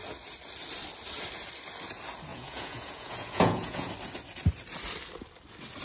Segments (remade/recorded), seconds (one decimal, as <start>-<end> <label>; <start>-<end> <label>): 0.0-2.3 recorded; 2.3-3.9 remade; 3.9-5.8 recorded